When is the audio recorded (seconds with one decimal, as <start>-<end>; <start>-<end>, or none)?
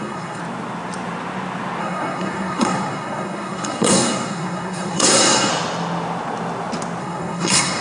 0.4-1.8; 5.5-7.0